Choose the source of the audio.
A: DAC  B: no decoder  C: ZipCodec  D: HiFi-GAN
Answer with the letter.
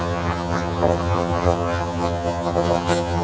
D